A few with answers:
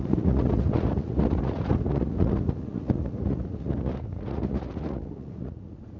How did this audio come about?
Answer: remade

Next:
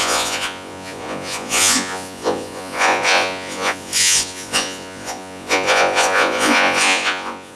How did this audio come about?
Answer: remade